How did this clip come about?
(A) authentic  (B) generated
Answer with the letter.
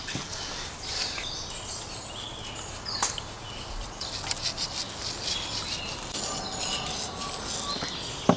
A